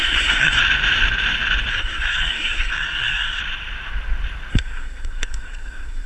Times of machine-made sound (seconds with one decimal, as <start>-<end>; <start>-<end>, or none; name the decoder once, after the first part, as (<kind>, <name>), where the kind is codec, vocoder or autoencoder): 0.0-0.6 (codec, SNAC); 1.7-3.4; 4.5-6.1